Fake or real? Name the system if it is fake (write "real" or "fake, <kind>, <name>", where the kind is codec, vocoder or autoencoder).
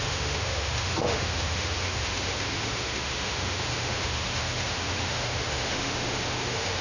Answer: fake, autoencoder, DAC-VAE